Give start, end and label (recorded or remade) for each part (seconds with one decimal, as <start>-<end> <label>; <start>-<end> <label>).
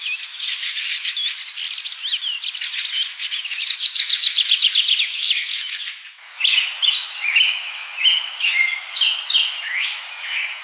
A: 0.0-1.4 remade; 1.4-3.3 recorded; 3.3-10.6 remade